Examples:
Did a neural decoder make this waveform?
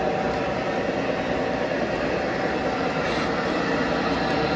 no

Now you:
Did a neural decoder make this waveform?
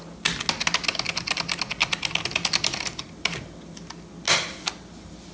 no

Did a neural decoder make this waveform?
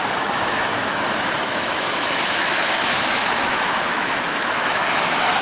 yes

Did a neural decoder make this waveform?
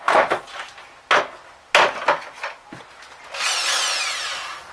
no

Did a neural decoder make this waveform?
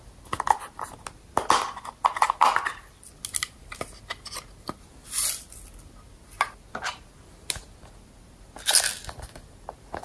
no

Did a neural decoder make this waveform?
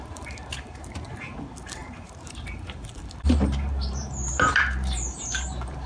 yes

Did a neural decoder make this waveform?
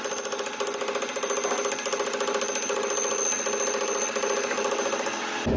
no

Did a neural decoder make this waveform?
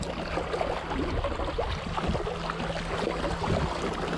no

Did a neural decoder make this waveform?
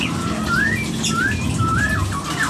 no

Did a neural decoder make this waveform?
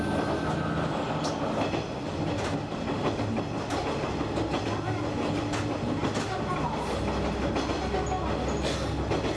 no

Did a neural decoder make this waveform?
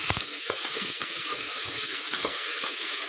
yes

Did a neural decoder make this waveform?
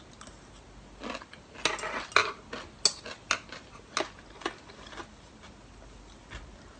no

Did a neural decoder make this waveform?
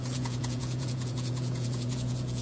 yes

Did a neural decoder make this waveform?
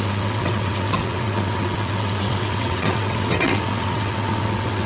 yes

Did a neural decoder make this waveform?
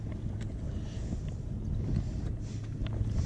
no